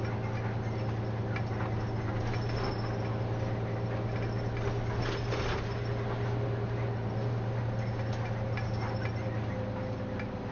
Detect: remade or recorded recorded